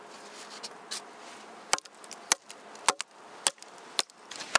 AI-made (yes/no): no